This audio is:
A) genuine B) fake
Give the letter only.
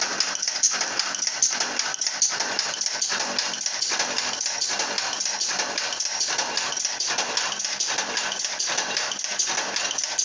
A